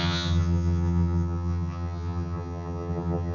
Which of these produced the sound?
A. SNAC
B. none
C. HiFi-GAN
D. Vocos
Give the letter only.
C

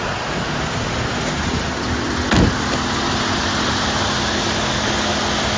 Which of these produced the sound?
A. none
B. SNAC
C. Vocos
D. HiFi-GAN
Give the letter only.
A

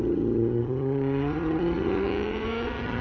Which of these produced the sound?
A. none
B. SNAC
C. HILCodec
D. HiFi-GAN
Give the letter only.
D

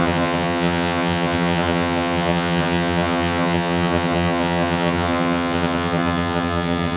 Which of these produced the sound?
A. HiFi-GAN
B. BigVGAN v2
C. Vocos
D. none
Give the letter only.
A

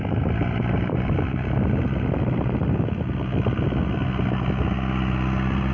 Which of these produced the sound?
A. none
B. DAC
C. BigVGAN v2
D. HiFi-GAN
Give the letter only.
A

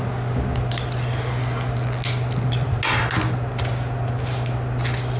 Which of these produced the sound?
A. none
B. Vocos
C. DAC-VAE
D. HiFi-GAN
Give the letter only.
A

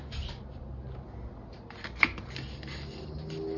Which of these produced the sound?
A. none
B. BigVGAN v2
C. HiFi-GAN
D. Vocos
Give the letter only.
A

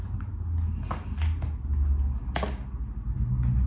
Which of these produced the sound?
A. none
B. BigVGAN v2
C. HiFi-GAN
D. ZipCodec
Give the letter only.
A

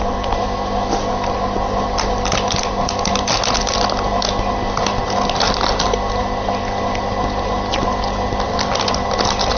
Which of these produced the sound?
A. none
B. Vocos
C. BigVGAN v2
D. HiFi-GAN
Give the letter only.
A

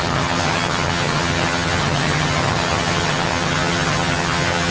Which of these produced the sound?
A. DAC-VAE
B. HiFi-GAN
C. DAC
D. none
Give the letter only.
B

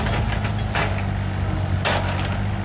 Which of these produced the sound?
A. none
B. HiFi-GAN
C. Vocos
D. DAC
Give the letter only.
A